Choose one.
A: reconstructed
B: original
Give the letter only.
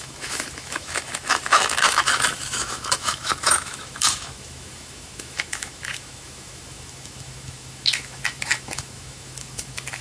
A